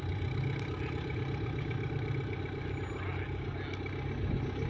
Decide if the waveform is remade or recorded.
recorded